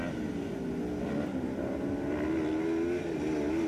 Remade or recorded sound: recorded